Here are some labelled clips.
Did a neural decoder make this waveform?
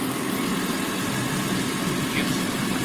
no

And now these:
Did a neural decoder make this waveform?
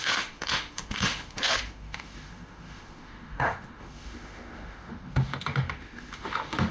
yes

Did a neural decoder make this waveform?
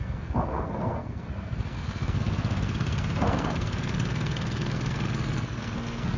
yes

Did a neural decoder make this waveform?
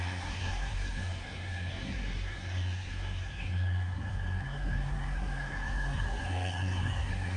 yes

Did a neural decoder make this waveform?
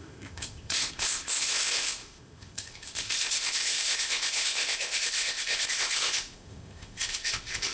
yes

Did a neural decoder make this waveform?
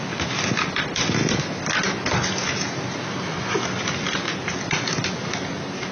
no